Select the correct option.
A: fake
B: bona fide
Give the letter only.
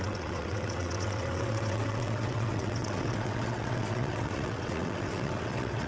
A